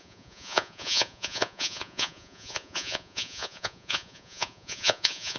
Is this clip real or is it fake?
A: fake